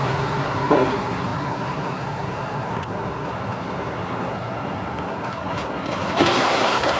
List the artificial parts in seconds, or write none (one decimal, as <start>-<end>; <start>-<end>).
0.0-7.0